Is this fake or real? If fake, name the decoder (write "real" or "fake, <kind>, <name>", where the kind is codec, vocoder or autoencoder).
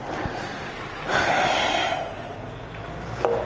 real